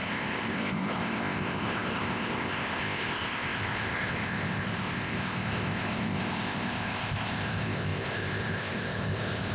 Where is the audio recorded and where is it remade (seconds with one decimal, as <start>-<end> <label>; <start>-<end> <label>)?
0.0-9.5 remade